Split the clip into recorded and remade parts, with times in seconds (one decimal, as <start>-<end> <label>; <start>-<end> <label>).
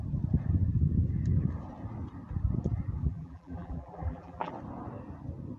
0.0-3.0 recorded; 3.0-4.5 remade; 4.5-5.6 recorded